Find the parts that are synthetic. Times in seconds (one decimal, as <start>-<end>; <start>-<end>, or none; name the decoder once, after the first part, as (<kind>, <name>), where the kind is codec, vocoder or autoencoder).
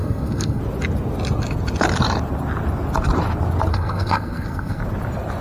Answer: 0.0-0.6 (codec, SNAC); 3.7-4.8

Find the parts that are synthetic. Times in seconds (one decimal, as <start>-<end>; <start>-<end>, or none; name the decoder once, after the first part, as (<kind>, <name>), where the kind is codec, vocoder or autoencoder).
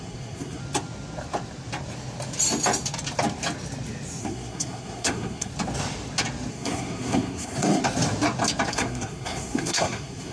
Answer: 0.0-0.6 (codec, SNAC); 4.2-5.5; 6.5-7.8; 8.7-10.3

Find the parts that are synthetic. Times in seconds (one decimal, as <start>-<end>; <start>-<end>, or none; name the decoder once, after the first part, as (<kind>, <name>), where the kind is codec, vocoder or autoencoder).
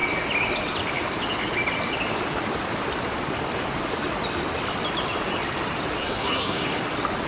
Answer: 6.0-6.8 (codec, SNAC)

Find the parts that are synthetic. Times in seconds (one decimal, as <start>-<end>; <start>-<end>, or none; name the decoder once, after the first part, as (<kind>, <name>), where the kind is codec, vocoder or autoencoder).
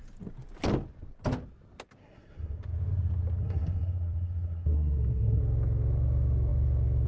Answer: 2.0-2.6 (codec, SNAC); 3.4-5.4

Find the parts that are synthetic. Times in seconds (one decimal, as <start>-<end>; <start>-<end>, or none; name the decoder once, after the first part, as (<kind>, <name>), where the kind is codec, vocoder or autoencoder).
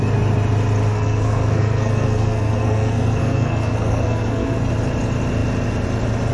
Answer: 0.9-4.7 (codec, SNAC)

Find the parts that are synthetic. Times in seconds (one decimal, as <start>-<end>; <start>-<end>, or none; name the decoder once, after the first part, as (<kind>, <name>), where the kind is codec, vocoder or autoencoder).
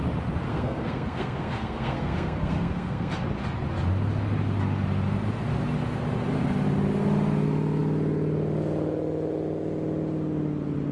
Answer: 0.5-3.1 (codec, SNAC)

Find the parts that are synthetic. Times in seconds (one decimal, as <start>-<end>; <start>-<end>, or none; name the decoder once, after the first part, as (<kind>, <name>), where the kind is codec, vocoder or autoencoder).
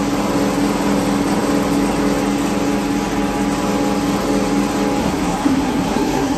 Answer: 5.0-6.4 (codec, SNAC)